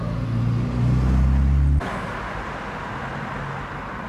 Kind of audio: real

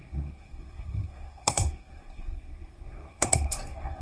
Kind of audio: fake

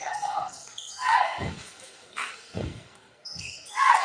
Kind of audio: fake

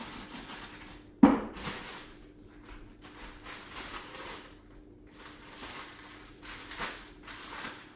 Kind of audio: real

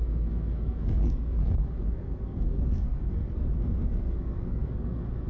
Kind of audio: fake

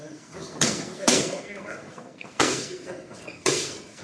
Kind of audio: fake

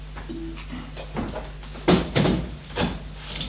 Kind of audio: real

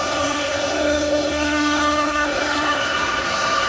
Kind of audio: fake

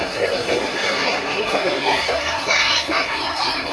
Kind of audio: fake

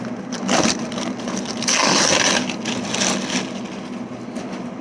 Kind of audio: real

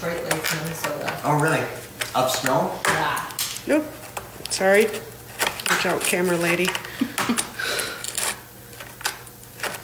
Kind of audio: real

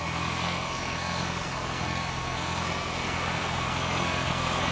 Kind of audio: fake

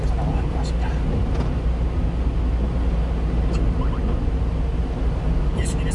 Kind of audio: real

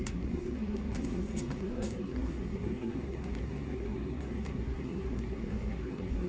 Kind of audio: fake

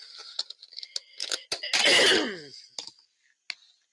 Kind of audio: real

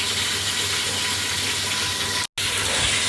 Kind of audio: real